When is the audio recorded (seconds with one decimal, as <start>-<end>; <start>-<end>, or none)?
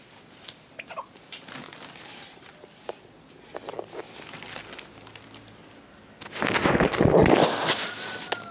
0.0-8.5